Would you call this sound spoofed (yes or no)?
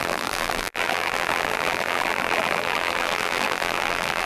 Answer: yes